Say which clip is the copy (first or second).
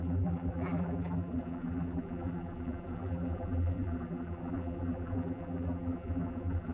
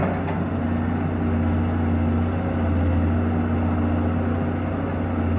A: first